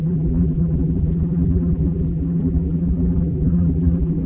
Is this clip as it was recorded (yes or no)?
no